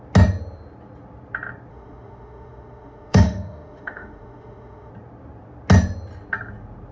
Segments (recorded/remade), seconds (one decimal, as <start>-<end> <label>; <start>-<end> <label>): 0.0-1.7 recorded; 1.7-4.9 remade; 4.9-6.9 recorded